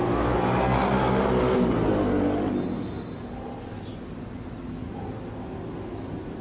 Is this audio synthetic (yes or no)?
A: no